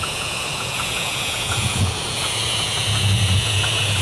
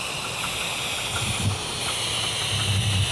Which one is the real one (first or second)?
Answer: second